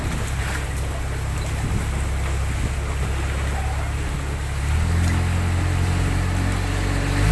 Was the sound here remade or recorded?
recorded